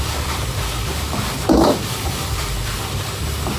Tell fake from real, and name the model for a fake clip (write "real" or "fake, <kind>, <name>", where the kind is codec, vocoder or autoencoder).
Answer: fake, vocoder, BigVGAN v2